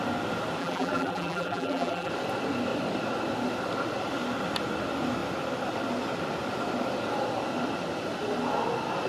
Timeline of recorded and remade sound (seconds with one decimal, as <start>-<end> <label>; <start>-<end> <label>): 0.0-0.6 recorded; 0.6-2.1 remade; 2.1-9.1 recorded